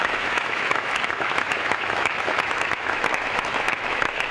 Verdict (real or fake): fake